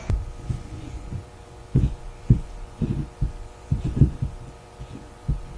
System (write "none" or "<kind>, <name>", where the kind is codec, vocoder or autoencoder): vocoder, Vocos